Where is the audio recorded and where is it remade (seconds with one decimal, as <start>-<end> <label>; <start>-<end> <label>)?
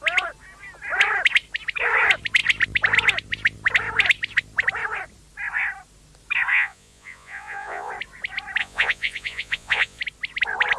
0.0-6.5 recorded; 6.5-7.9 remade; 7.9-8.6 recorded; 8.6-10.0 remade; 10.0-10.8 recorded